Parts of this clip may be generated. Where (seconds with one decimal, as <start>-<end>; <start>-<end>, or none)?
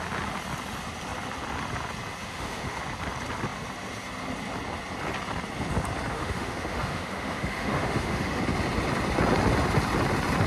2.2-2.8; 6.1-8.4